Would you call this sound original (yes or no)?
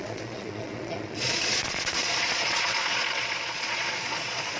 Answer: no